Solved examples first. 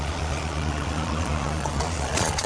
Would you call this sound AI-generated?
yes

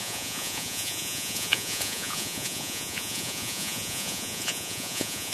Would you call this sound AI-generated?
yes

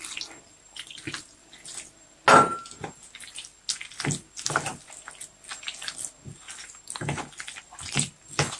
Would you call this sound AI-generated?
no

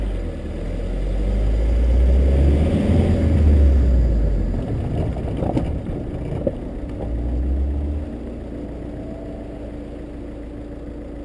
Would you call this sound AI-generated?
no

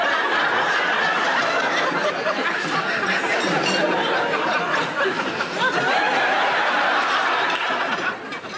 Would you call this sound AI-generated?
no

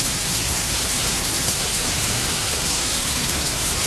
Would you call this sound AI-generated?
yes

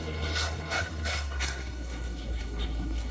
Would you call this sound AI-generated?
yes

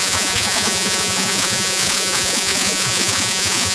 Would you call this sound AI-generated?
yes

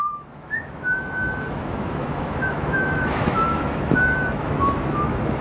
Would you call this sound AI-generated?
yes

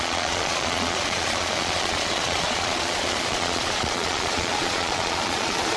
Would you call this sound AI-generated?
yes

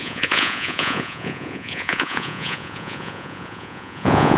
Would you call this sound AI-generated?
yes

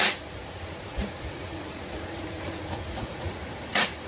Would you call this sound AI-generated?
yes